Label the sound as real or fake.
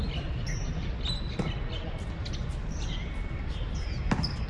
real